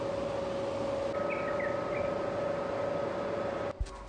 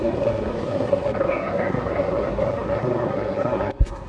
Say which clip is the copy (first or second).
second